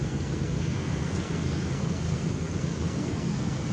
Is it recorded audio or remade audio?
remade